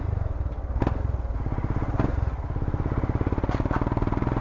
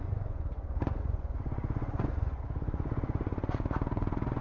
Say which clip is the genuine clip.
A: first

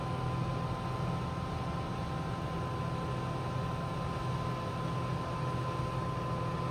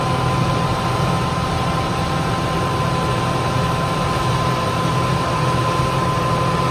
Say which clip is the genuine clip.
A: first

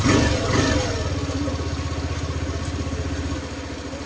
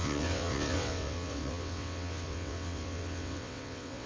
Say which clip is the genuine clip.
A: first